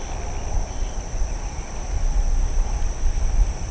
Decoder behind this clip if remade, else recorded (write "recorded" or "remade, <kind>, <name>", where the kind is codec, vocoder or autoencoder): recorded